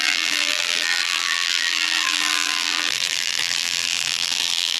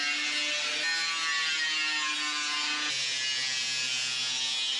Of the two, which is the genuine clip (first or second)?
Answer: second